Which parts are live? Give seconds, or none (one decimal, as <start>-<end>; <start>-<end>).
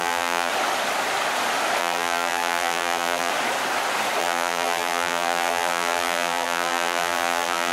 0.5-1.8; 3.3-4.2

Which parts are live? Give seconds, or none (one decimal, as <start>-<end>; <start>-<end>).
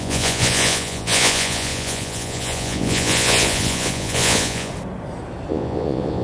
4.7-5.5